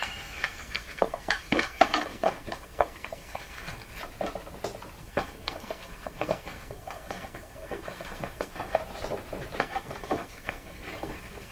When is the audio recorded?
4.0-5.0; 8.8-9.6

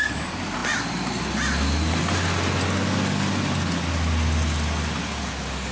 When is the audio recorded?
0.0-5.7

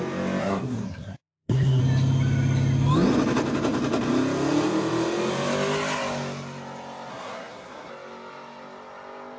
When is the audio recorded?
0.0-0.4; 1.8-7.1; 7.9-9.4

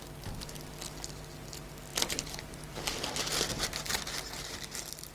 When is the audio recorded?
0.0-5.1

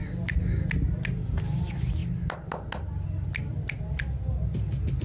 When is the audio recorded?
0.0-5.0

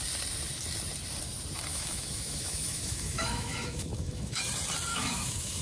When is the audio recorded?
0.0-1.7; 4.4-4.9

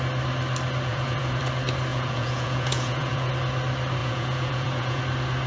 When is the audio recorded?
0.0-0.9; 1.4-1.9; 3.3-4.0; 5.0-5.5